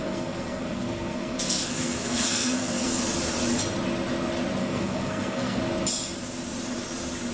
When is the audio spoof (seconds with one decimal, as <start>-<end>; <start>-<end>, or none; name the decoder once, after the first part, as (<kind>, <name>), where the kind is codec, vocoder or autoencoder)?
0.0-3.0 (codec, SNAC); 4.6-5.6